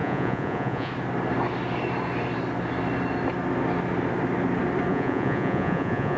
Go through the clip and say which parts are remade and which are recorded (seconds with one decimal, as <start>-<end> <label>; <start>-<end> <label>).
0.0-0.9 remade; 0.9-4.9 recorded; 4.9-6.2 remade